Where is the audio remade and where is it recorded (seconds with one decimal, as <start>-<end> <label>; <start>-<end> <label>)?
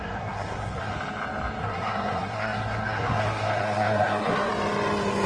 0.0-0.9 remade; 0.9-1.6 recorded; 1.6-4.5 remade; 4.5-5.3 recorded